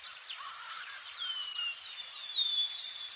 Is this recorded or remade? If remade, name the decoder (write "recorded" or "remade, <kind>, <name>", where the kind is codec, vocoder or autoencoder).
remade, vocoder, BigVGAN v2